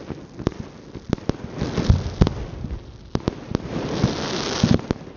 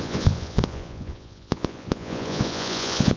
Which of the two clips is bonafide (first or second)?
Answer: first